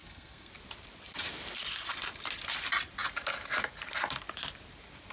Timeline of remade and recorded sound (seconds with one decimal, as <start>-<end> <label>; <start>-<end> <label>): 0.0-0.5 remade; 0.5-5.1 recorded